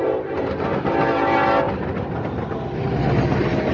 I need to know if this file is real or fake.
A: real